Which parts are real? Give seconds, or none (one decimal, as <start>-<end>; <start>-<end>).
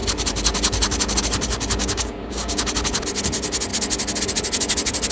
0.0-1.8; 2.6-5.1